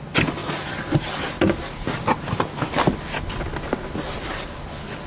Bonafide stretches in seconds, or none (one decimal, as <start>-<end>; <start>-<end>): 0.0-5.1